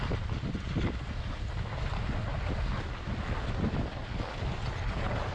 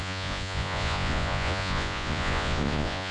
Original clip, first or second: first